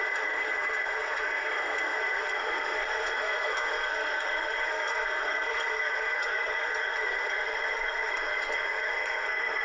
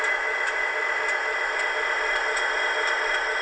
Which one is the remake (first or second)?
first